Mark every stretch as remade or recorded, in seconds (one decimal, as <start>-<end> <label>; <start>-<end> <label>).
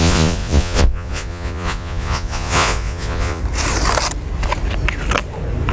0.0-3.4 remade; 3.4-5.7 recorded